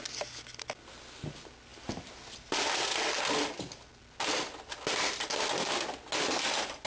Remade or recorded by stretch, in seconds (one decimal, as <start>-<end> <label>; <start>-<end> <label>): 0.0-6.9 recorded